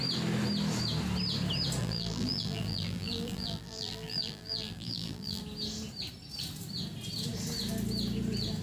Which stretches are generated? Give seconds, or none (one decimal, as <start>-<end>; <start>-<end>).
1.8-5.4